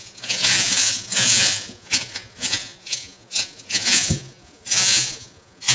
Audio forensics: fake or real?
fake